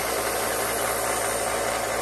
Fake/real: real